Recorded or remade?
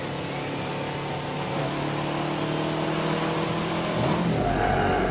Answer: recorded